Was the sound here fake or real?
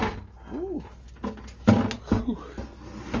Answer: real